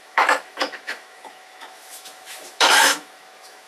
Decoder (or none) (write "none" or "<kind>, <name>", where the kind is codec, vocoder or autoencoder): autoencoder, DAC-VAE